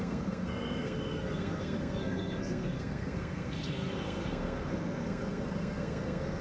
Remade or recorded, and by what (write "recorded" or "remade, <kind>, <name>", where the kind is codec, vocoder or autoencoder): remade, codec, SNAC